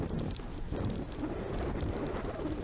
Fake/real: real